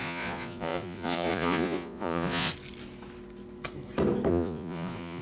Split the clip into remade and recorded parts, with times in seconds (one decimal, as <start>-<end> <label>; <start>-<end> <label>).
0.0-2.5 remade; 2.5-4.3 recorded; 4.3-5.2 remade